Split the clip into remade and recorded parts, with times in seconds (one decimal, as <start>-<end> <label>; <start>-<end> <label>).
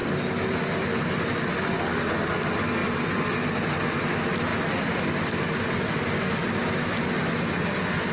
0.0-8.1 recorded